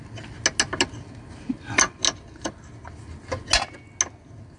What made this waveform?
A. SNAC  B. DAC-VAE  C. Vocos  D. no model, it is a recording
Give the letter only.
D